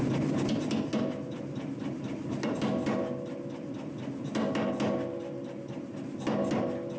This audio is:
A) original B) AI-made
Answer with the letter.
A